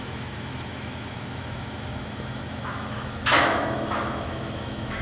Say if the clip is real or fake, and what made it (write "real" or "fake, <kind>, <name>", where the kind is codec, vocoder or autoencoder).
fake, autoencoder, DAC-VAE